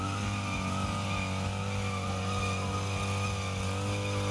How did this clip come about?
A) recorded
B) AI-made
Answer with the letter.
A